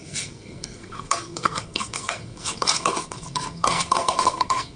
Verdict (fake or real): fake